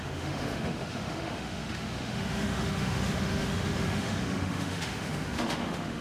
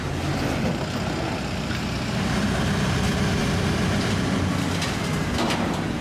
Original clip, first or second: second